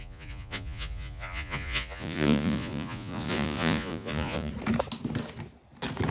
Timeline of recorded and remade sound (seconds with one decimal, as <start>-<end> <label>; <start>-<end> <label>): 0.0-4.5 remade; 4.5-6.1 recorded